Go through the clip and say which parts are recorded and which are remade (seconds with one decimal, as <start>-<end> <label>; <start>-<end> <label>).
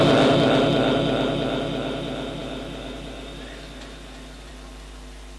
0.0-5.4 recorded